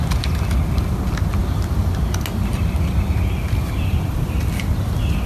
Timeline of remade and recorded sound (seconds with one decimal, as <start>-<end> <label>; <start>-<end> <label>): 0.0-5.3 recorded